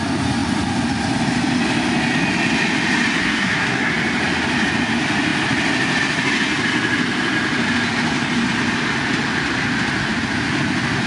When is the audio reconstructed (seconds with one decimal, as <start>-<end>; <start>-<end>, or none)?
3.2-3.9